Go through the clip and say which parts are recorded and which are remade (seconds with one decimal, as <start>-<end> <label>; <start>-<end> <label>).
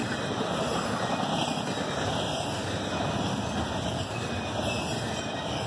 0.0-0.8 remade; 0.8-5.7 recorded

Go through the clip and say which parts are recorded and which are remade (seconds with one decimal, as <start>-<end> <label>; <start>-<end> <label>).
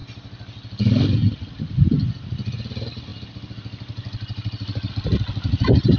0.0-6.0 recorded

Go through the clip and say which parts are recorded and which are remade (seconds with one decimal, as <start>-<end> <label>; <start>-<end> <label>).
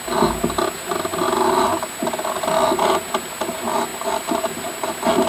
0.0-5.3 recorded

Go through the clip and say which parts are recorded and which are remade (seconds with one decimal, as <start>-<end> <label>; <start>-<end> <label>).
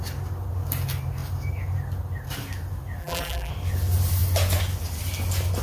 0.0-3.0 recorded; 3.0-3.5 remade; 3.5-5.6 recorded